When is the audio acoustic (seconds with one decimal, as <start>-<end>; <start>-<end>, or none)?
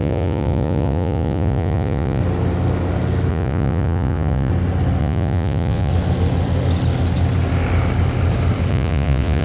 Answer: 2.2-3.3; 4.5-5.0; 5.9-8.7